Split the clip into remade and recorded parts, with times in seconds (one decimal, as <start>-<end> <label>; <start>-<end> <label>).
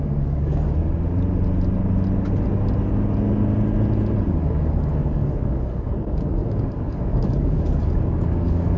0.0-0.8 remade; 0.8-4.3 recorded; 4.3-8.8 remade